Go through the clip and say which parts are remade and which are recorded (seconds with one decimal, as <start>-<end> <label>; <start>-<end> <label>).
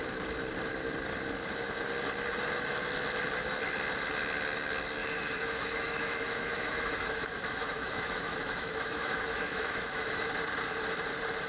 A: 0.0-5.0 recorded; 5.0-10.3 remade; 10.3-11.5 recorded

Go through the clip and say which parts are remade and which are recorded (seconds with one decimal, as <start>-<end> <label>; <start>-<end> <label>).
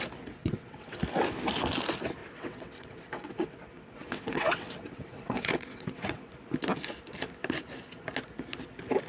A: 0.0-0.4 recorded; 0.4-1.0 remade; 1.0-2.2 recorded; 2.2-6.3 remade; 6.3-9.1 recorded